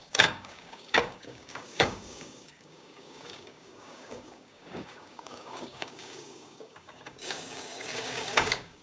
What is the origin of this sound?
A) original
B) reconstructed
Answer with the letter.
B